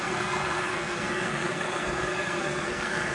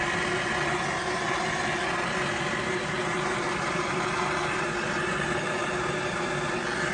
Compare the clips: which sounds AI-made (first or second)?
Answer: first